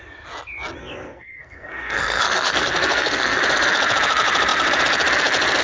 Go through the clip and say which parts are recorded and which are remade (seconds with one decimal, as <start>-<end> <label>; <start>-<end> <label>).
0.0-0.8 recorded; 0.8-3.4 remade; 3.4-5.6 recorded